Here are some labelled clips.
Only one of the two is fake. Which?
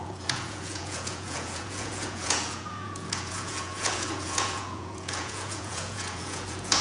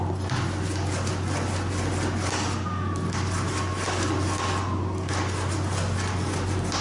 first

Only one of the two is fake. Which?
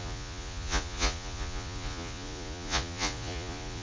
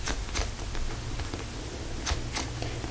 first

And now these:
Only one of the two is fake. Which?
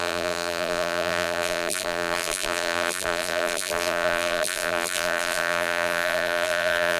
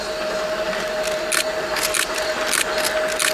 first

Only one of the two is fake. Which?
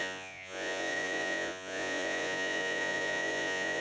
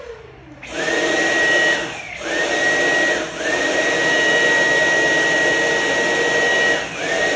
first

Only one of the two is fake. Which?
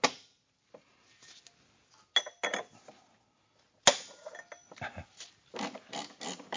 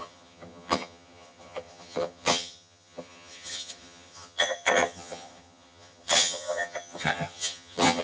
second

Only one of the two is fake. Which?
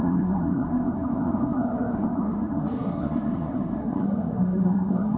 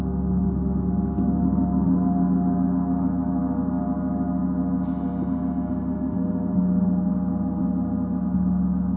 first